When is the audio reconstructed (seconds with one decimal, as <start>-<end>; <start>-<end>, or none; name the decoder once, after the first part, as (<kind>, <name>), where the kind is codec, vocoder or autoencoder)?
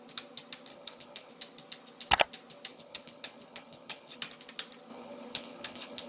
0.7-1.3 (codec, HILCodec); 2.7-4.2; 4.9-6.1